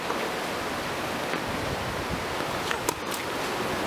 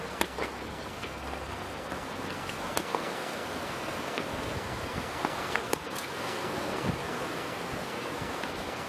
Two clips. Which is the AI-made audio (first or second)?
second